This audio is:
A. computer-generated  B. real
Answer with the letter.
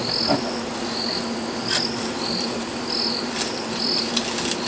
B